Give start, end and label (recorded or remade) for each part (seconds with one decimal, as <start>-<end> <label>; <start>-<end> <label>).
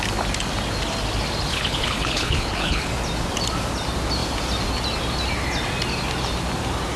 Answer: 0.0-1.5 recorded; 1.5-2.9 remade; 2.9-7.0 recorded